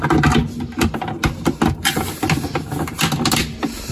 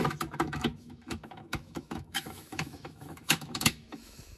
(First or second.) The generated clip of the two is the second